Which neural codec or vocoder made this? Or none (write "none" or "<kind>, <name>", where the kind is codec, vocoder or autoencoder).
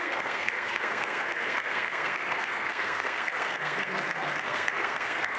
codec, SNAC